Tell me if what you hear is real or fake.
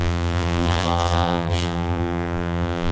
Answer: fake